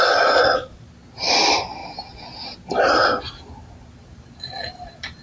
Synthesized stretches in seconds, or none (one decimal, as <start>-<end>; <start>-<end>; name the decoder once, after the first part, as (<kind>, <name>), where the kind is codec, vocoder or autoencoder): none